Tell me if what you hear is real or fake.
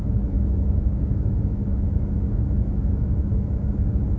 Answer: fake